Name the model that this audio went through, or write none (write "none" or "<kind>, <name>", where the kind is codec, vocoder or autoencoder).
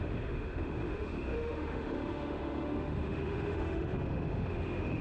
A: autoencoder, DAC-VAE